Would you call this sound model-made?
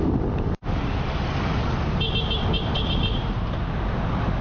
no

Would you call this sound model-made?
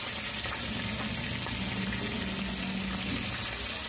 no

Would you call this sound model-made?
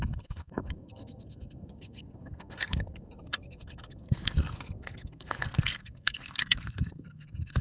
yes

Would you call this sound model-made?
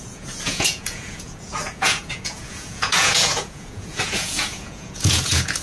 yes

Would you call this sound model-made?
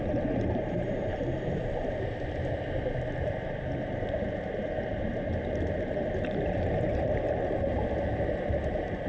yes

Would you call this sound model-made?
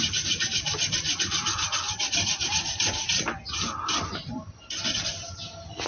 no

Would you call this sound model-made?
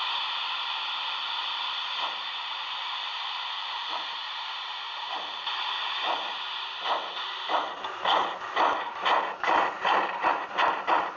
yes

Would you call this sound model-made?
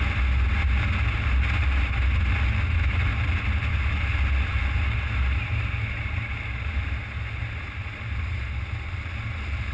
no